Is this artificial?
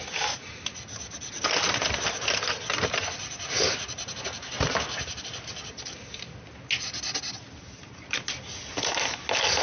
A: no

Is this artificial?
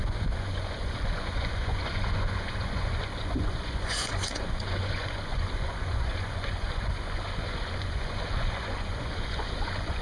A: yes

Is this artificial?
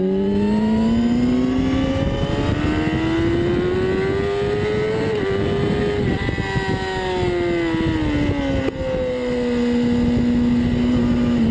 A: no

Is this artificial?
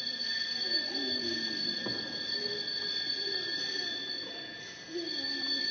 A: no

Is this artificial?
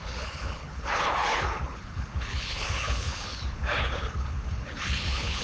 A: yes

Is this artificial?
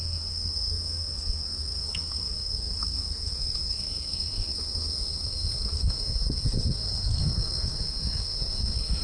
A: yes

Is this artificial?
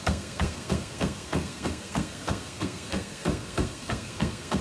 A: yes